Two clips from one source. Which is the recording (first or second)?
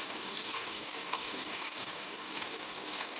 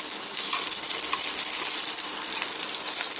second